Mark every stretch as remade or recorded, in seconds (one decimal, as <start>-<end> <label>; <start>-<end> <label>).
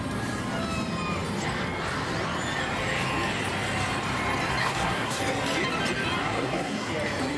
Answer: 0.0-4.6 recorded; 4.6-5.2 remade; 5.2-6.2 recorded; 6.2-6.9 remade; 6.9-7.4 recorded